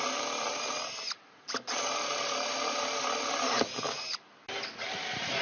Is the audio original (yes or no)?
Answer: yes